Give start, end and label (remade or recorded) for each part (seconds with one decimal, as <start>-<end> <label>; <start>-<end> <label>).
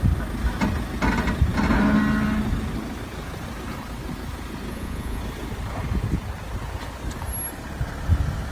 0.0-4.7 recorded; 4.7-5.2 remade; 5.2-8.5 recorded